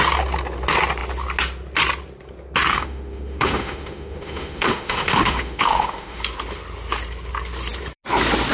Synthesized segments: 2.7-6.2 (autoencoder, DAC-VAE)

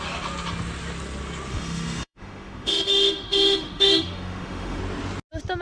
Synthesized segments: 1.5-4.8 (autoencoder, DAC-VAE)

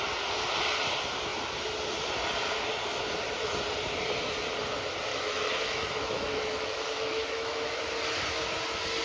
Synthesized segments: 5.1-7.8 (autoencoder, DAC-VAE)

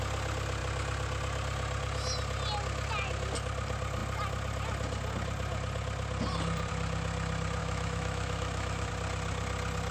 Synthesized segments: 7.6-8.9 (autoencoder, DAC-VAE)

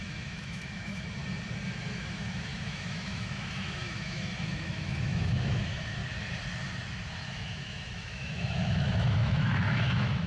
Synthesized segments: 0.0-1.2 (autoencoder, DAC-VAE); 1.7-6.0; 7.3-10.3

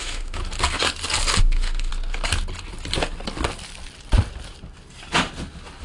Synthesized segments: 0.0-0.4 (autoencoder, DAC-VAE); 1.4-1.9